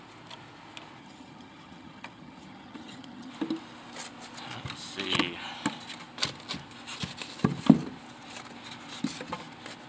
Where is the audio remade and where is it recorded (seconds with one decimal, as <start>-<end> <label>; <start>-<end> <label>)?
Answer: 0.0-1.0 recorded; 1.0-3.3 remade; 3.3-9.9 recorded